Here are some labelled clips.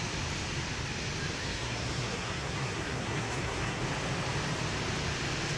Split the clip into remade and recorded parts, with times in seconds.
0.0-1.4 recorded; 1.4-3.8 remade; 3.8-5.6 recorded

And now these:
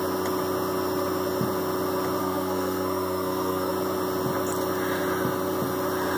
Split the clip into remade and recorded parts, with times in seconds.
0.0-2.2 recorded; 2.2-3.7 remade; 3.7-6.2 recorded

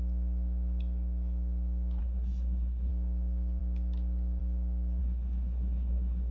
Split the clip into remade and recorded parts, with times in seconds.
0.0-2.0 recorded; 2.0-2.9 remade; 2.9-5.0 recorded; 5.0-6.3 remade